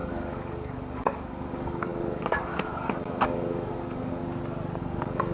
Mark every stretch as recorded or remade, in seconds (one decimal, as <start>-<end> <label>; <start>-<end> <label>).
0.0-4.2 remade; 4.2-4.8 recorded; 4.8-5.3 remade

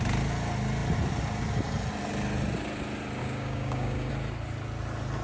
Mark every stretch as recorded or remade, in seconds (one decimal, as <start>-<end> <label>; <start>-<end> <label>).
0.0-3.2 recorded; 3.2-4.1 remade; 4.1-5.2 recorded

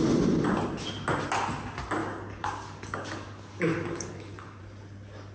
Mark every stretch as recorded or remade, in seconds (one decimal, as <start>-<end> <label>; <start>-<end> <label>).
0.0-2.0 recorded; 2.0-4.6 remade; 4.6-5.3 recorded

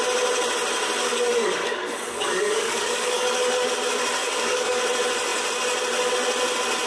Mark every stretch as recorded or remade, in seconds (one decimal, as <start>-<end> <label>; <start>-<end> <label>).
0.0-1.0 recorded; 1.0-3.7 remade; 3.7-4.2 recorded; 4.2-4.8 remade; 4.8-6.9 recorded

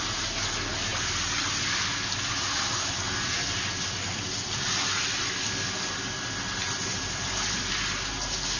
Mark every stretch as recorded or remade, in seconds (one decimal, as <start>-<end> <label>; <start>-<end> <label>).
0.0-8.6 recorded

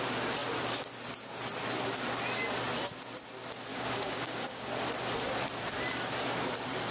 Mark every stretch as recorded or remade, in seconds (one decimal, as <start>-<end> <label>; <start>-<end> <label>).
0.0-3.7 recorded; 3.7-4.7 remade; 4.7-6.9 recorded

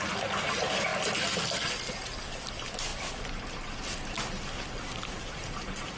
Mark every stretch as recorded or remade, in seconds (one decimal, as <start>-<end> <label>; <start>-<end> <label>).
0.0-6.0 recorded